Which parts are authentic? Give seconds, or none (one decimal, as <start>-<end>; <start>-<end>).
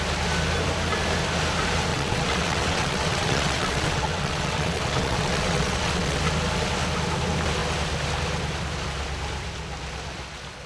0.0-1.9; 6.2-10.7